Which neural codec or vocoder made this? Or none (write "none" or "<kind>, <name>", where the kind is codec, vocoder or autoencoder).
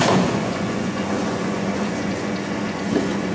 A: vocoder, Vocos